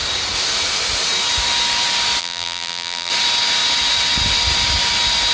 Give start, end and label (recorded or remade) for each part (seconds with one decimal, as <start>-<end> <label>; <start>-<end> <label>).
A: 0.0-2.2 recorded; 2.2-3.1 remade; 3.1-5.3 recorded